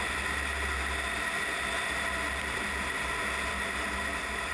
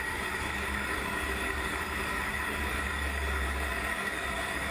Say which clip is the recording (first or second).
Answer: first